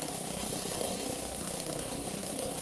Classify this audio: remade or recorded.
remade